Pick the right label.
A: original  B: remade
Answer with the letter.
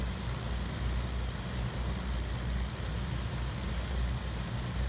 A